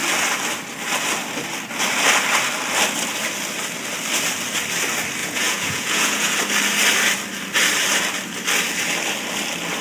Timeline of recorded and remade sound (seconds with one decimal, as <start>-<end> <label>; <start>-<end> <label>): 0.0-5.2 recorded; 5.2-6.4 remade; 6.4-9.8 recorded